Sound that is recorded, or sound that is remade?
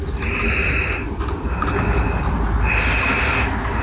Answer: recorded